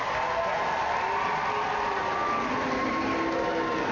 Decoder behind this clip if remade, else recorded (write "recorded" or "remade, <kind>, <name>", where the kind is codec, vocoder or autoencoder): recorded